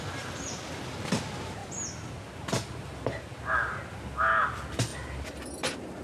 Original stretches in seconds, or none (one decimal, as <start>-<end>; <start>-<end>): 0.0-6.0